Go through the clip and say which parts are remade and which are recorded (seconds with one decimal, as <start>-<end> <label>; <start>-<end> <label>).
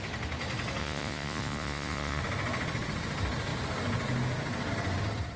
0.0-0.8 recorded; 0.8-2.2 remade; 2.2-5.4 recorded